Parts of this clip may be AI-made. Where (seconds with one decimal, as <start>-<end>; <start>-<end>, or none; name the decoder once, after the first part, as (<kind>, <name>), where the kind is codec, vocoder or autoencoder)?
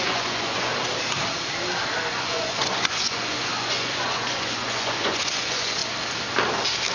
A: 0.0-0.7 (vocoder, Vocos); 2.1-5.8